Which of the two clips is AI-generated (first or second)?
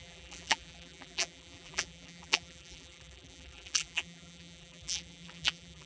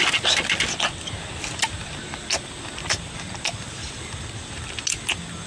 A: first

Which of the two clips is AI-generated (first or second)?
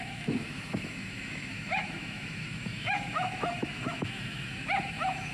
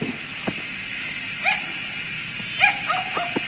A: first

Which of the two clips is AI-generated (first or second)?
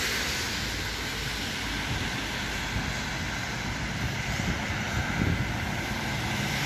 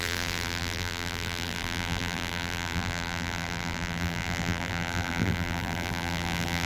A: second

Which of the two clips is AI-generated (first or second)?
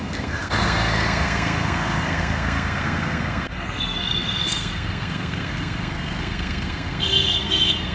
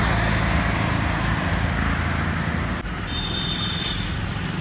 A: first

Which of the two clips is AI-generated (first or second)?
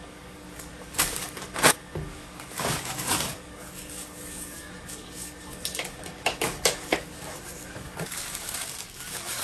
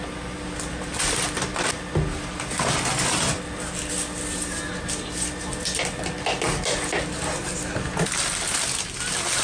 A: first